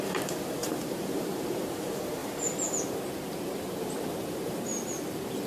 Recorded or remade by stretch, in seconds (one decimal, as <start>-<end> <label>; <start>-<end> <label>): 0.0-2.2 remade; 2.2-5.5 recorded